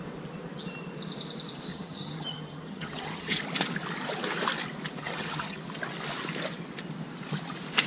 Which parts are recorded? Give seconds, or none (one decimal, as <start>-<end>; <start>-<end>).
0.0-1.7; 3.4-5.0; 5.6-7.9